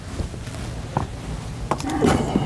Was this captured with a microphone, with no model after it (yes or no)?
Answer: yes